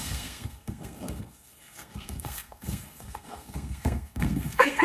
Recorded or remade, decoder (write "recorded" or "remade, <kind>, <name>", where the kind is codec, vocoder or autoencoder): remade, codec, SNAC